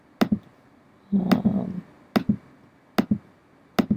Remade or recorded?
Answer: recorded